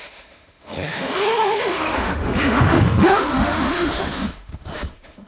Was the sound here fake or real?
fake